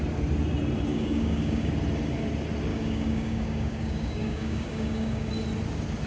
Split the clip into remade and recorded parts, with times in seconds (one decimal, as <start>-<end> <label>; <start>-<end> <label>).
0.0-0.9 recorded; 0.9-1.7 remade; 1.7-2.7 recorded; 2.7-5.3 remade; 5.3-6.1 recorded